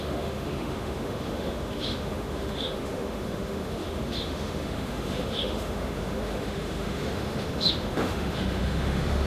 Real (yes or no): no